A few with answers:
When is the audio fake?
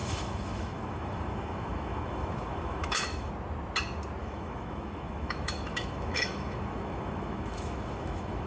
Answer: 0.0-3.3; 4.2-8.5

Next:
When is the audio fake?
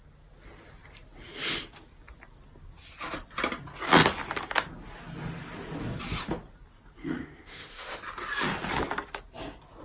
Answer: 7.0-8.0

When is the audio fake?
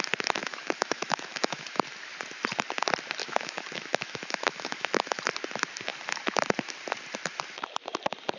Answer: 0.4-1.8; 3.2-5.2